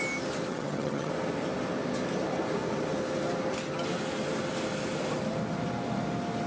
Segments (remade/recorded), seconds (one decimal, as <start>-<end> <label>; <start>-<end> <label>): 0.0-0.5 recorded; 0.5-1.1 remade; 1.1-6.5 recorded